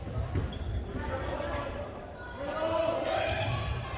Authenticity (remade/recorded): remade